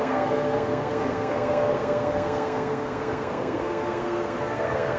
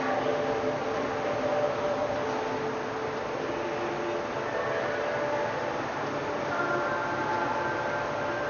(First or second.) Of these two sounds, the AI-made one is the first